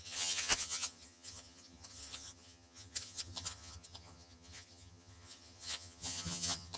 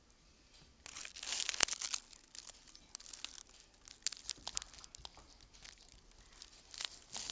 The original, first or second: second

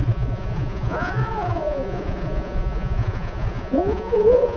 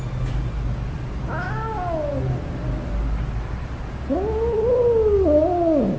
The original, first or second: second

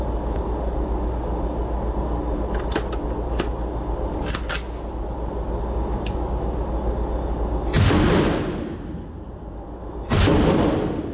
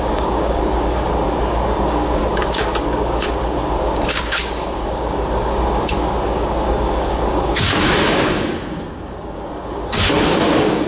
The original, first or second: first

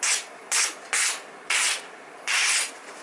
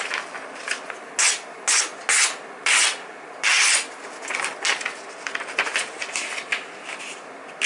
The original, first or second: second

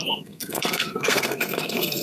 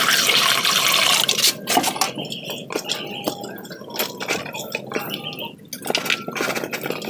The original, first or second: second